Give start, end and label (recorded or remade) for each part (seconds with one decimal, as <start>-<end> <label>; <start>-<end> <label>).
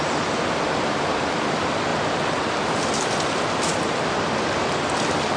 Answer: 0.0-1.9 recorded; 1.9-5.4 remade